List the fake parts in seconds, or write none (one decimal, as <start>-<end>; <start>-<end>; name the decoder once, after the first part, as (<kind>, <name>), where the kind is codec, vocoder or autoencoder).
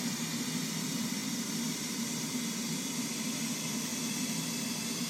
none